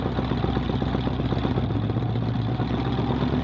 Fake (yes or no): no